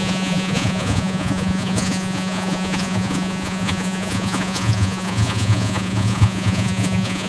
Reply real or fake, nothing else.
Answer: fake